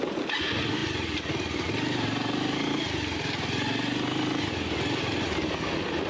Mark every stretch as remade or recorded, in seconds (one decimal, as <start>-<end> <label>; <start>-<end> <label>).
0.0-6.1 recorded